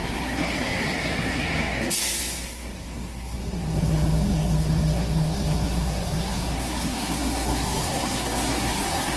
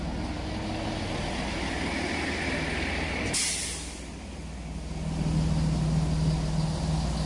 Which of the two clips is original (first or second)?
second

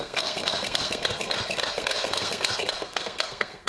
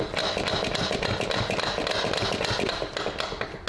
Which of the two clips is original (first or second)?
second